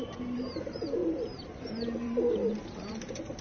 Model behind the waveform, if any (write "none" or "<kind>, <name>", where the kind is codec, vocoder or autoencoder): vocoder, BigVGAN v2